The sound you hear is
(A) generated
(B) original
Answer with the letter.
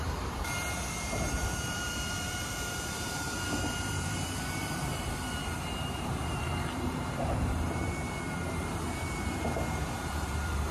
A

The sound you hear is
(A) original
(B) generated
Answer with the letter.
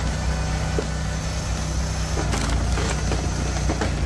A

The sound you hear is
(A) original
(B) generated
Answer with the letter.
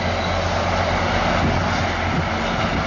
A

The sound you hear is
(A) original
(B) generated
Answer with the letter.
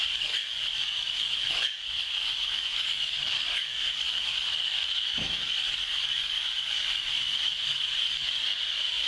B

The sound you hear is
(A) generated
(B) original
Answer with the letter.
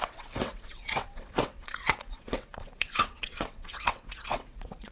A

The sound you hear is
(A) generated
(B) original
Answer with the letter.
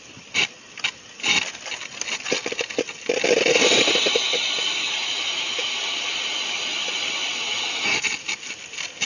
B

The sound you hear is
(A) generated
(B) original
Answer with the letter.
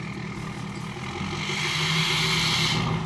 B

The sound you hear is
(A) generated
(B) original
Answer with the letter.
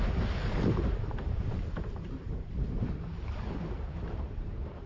A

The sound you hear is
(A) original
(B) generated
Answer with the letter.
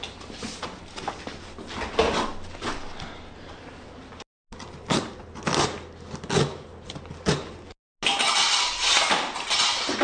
A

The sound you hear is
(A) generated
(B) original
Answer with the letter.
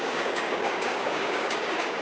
A